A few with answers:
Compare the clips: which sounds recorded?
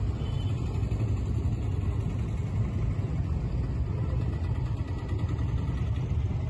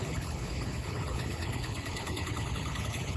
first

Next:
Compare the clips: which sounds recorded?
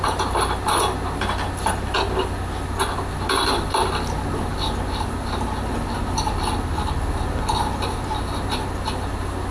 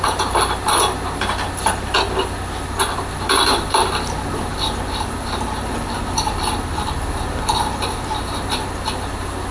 first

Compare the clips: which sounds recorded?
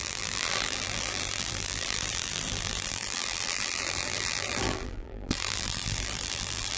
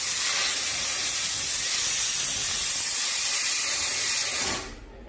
second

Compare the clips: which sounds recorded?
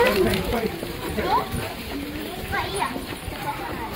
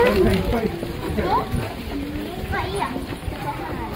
second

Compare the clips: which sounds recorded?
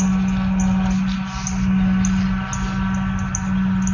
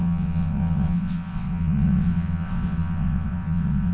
first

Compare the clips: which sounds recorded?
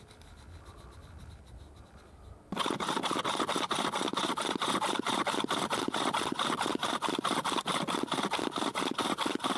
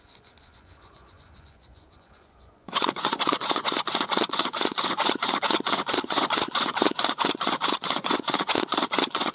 first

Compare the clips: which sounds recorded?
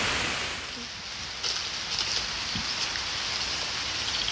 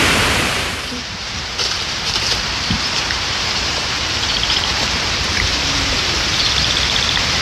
first